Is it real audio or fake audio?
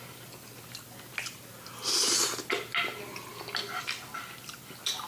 real